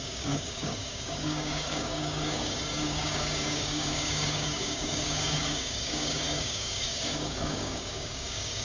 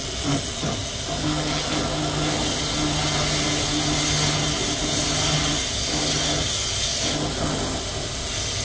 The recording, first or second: second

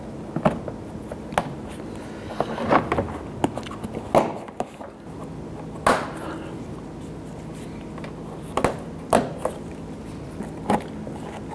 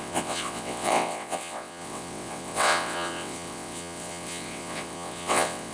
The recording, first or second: first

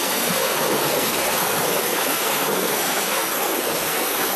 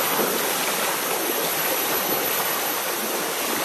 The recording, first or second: second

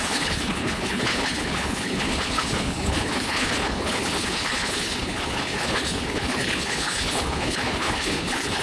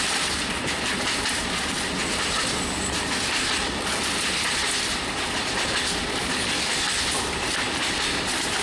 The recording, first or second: second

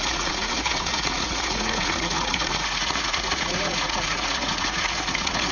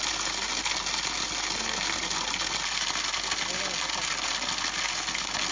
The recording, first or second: second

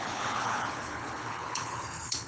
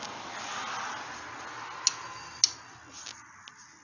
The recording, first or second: second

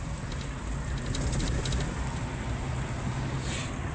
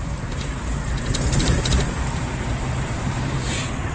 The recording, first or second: first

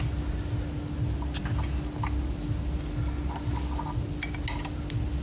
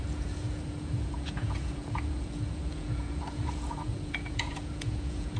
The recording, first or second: first